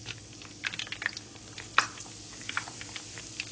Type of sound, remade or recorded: remade